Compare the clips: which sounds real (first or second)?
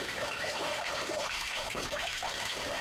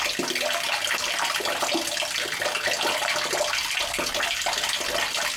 second